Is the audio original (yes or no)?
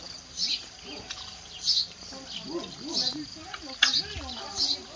yes